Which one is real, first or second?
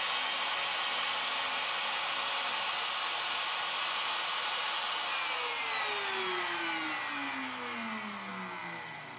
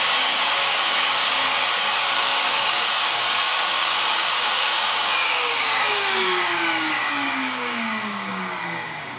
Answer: first